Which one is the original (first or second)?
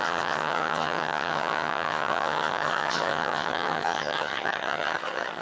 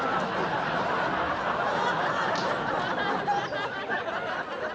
second